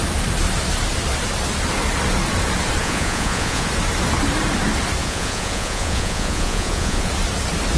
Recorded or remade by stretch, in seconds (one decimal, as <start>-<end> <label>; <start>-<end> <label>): 0.0-2.8 recorded; 2.8-3.7 remade; 3.7-5.0 recorded; 5.0-7.1 remade; 7.1-7.8 recorded